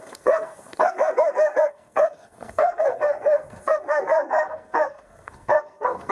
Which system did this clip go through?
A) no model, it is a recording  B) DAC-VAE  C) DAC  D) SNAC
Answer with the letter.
D